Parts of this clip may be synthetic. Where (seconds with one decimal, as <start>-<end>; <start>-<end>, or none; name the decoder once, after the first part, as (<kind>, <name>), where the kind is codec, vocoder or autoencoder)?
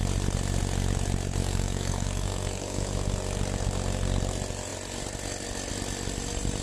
1.4-2.9 (codec, DAC)